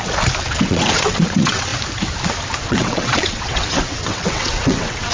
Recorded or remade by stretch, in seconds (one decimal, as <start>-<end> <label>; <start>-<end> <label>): 0.0-0.5 recorded; 0.5-1.7 remade; 1.7-2.6 recorded; 2.6-5.1 remade